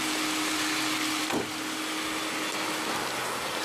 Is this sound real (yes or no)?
yes